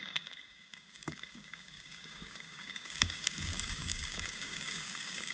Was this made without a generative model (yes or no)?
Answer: no